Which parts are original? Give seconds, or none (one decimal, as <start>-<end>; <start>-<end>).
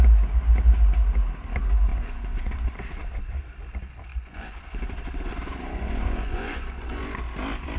0.0-1.9; 2.8-4.1; 7.0-7.8